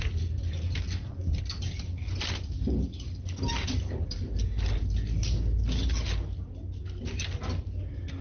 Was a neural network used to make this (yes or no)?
no